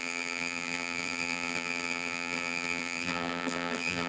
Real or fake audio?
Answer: fake